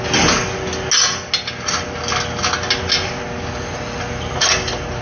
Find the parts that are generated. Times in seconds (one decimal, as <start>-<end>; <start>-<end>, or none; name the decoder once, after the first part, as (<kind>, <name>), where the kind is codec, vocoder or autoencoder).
none